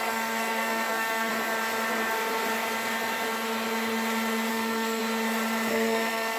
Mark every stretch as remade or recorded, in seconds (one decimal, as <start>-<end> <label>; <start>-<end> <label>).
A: 0.0-1.3 remade; 1.3-4.5 recorded; 4.5-5.0 remade; 5.0-5.7 recorded; 5.7-6.4 remade